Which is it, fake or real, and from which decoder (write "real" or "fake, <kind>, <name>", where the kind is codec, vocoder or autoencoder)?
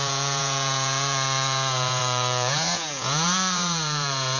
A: fake, vocoder, Vocos